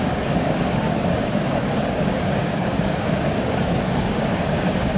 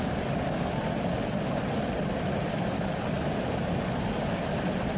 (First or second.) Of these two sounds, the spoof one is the first